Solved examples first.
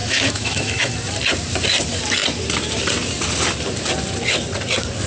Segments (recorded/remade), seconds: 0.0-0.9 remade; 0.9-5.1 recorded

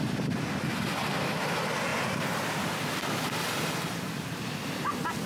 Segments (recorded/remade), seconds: 0.0-5.3 recorded

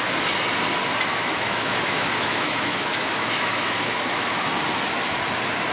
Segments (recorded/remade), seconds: 0.0-1.1 recorded; 1.1-4.5 remade; 4.5-5.7 recorded

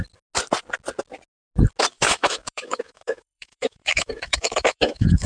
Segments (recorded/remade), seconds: 0.0-1.9 recorded; 1.9-5.3 remade

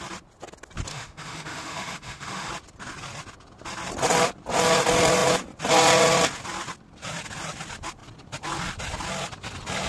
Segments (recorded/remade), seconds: 0.0-0.9 recorded; 0.9-2.5 remade; 2.5-9.9 recorded

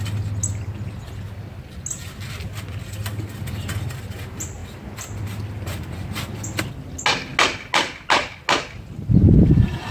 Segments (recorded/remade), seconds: 0.0-9.9 recorded